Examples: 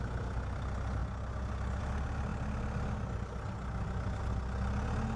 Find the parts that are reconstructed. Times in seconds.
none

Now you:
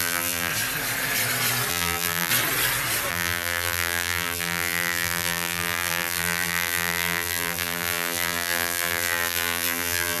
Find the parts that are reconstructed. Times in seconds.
0.0-0.5 (vocoder, BigVGAN v2); 1.7-2.3; 3.1-10.2

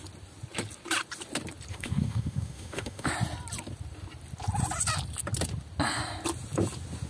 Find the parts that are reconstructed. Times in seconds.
1.7-3.1 (autoencoder, DAC-VAE)

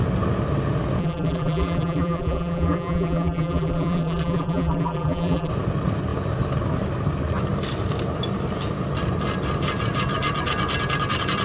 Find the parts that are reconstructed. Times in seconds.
1.0-5.5 (vocoder, BigVGAN v2)

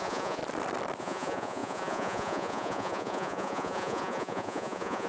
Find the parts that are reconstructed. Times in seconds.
0.0-0.4 (vocoder, Vocos); 1.0-5.1

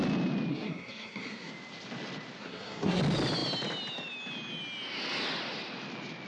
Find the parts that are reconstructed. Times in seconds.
0.5-1.5 (codec, SNAC); 2.4-3.0

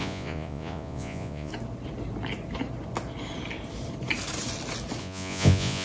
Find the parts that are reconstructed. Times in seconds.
0.0-1.5 (vocoder, Vocos); 5.0-5.8